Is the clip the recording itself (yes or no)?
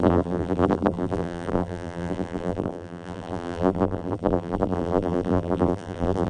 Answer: no